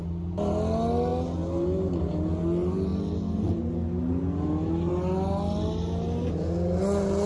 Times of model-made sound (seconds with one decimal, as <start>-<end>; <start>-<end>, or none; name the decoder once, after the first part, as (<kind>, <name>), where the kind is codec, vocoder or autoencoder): none